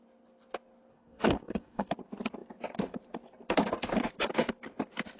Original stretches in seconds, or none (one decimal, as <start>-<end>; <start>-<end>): 0.0-0.9; 1.9-5.2